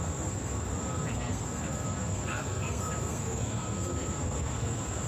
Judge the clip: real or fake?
fake